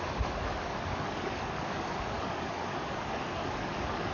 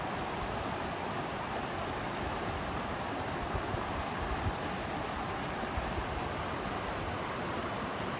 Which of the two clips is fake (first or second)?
first